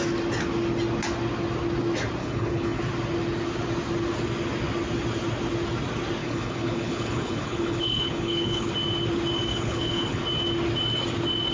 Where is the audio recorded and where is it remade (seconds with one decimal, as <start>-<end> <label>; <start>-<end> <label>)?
0.0-2.2 recorded; 2.2-2.8 remade; 2.8-6.2 recorded; 6.2-8.7 remade; 8.7-9.5 recorded; 9.5-10.2 remade; 10.2-11.5 recorded